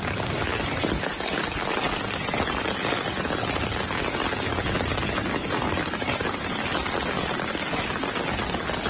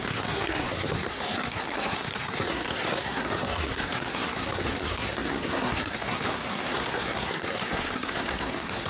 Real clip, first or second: first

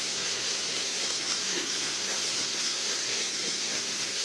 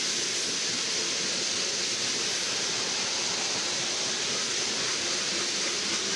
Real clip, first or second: second